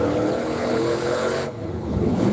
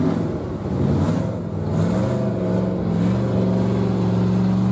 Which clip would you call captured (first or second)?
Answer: second